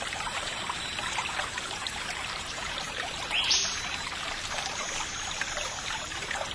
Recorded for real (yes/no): no